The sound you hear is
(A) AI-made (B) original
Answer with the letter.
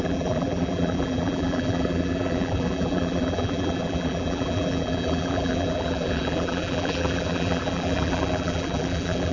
A